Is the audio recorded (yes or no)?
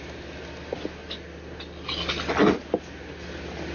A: yes